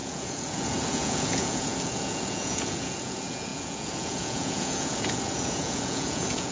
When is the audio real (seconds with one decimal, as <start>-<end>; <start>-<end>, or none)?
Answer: none